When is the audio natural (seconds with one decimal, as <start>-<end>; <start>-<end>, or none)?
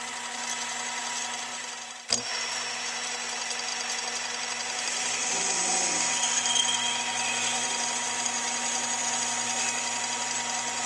0.0-1.5; 2.2-10.9